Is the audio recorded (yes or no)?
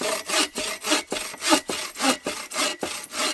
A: no